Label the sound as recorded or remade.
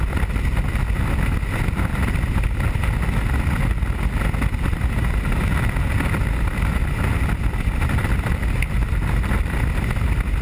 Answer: recorded